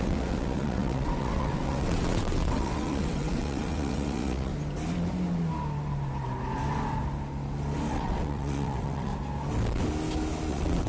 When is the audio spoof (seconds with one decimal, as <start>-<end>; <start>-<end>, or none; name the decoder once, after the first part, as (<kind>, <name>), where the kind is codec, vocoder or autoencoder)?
0.0-4.5 (vocoder, WaveNeXt); 7.9-9.1; 10.5-10.9